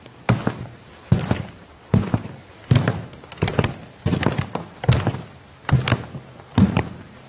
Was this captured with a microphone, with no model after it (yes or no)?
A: no